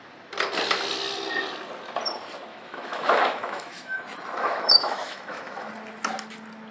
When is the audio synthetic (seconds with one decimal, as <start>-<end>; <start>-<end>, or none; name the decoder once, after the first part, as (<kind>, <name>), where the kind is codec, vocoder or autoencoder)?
2.5-5.7 (autoencoder, DAC-VAE)